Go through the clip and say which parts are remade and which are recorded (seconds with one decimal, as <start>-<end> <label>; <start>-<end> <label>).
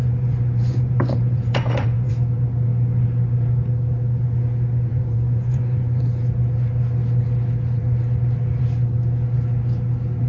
0.0-2.1 remade; 2.1-4.9 recorded; 4.9-6.0 remade; 6.0-10.3 recorded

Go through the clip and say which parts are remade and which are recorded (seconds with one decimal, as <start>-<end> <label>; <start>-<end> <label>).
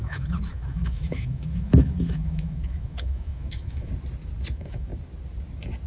0.0-3.9 remade; 3.9-4.5 recorded; 4.5-4.9 remade; 4.9-5.9 recorded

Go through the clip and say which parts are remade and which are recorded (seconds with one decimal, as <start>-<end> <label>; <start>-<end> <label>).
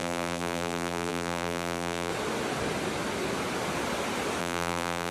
0.0-2.1 remade; 2.1-4.4 recorded; 4.4-5.1 remade